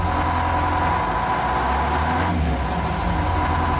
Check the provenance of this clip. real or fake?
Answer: real